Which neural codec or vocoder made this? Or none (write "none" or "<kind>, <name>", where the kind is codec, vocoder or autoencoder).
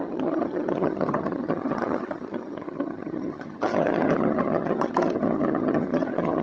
vocoder, HiFi-GAN